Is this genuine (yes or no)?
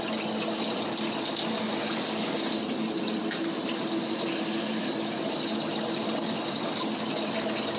yes